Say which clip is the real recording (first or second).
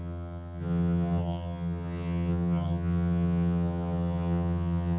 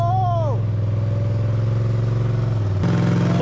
second